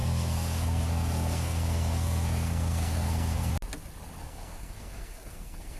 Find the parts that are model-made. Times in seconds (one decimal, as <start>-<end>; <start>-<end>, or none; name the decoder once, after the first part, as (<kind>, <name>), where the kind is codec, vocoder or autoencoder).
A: 0.0-3.5 (codec, SNAC); 4.2-5.8